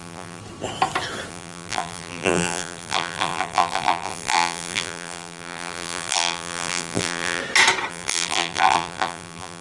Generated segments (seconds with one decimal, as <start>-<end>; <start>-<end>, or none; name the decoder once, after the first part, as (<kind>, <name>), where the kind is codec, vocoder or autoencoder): 0.0-0.4 (vocoder, BigVGAN v2); 1.3-7.4; 7.9-9.6